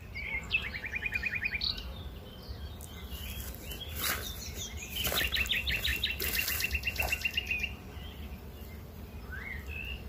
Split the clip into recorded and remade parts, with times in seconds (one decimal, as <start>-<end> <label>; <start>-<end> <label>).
0.0-1.2 recorded; 1.2-2.0 remade; 2.0-10.1 recorded